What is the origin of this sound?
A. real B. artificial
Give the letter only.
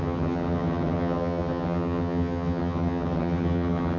B